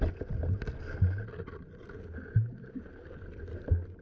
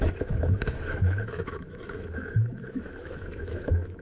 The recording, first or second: first